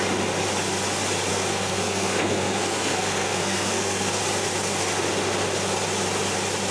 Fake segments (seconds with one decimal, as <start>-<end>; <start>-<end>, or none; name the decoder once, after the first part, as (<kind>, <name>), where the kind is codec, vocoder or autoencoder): 1.3-4.2 (codec, SNAC)